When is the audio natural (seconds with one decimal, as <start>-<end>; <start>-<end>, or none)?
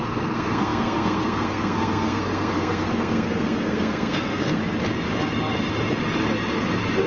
4.6-7.1